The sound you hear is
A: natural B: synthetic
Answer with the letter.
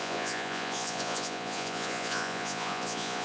B